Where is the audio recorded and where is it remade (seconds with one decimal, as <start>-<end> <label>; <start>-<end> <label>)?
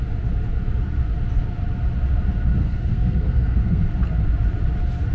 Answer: 0.0-2.6 recorded; 2.6-3.9 remade; 3.9-5.1 recorded